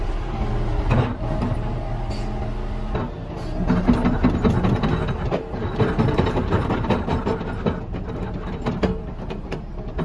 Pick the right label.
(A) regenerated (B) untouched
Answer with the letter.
B